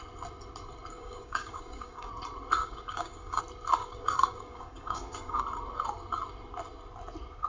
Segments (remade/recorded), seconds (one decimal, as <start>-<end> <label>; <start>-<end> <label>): 0.0-0.9 recorded; 0.9-2.1 remade; 2.1-2.6 recorded; 2.6-3.4 remade; 3.4-3.8 recorded; 3.8-5.4 remade; 5.4-7.5 recorded